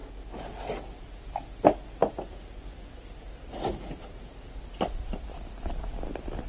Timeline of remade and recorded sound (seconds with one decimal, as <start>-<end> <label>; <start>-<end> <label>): 0.0-2.0 recorded; 2.0-4.6 remade; 4.6-5.3 recorded; 5.3-5.8 remade; 5.8-6.5 recorded